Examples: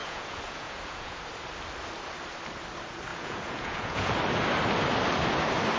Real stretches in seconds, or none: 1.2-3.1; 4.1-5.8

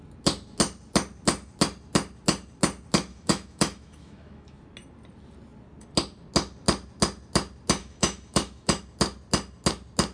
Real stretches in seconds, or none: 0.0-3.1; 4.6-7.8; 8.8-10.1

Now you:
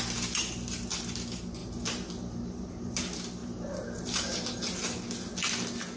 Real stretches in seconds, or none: 0.0-1.6; 3.0-3.4; 4.5-6.0

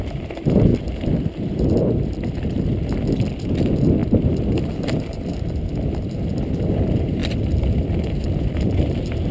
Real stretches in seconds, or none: none

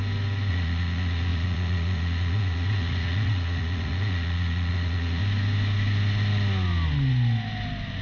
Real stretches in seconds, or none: 0.0-0.5; 5.2-8.0